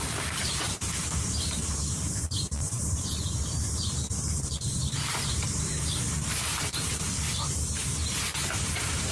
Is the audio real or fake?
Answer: fake